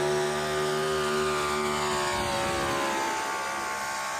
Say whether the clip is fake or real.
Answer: real